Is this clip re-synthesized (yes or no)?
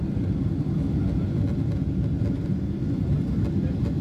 no